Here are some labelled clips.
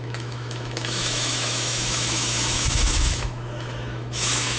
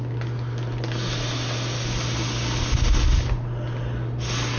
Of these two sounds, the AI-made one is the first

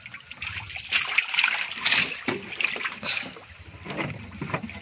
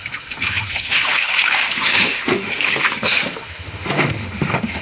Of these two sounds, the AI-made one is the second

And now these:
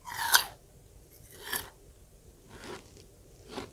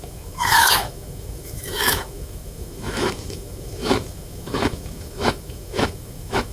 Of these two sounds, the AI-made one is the second